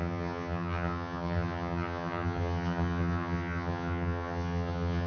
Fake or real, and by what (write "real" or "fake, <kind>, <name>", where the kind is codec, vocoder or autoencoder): fake, vocoder, HiFi-GAN